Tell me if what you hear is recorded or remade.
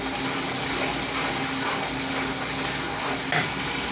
recorded